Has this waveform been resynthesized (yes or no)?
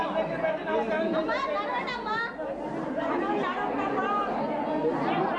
no